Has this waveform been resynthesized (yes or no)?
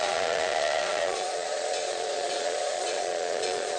yes